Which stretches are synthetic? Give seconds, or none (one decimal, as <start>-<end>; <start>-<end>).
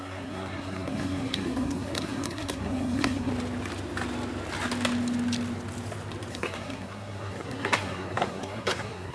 0.0-3.3; 6.3-9.1